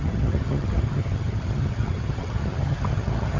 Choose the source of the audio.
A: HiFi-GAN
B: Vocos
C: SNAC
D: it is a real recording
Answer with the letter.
A